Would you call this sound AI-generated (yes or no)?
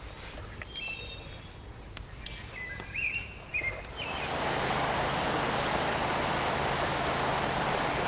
no